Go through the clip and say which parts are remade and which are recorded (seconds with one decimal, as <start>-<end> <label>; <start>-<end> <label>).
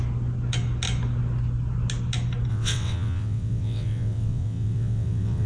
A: 0.0-2.5 recorded; 2.5-5.5 remade